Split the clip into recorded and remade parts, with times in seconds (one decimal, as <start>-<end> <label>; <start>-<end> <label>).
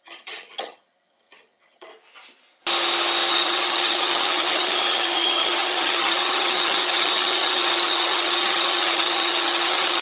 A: 0.0-1.9 remade; 1.9-3.3 recorded; 3.3-10.0 remade